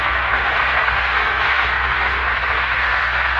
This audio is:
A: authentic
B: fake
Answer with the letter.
B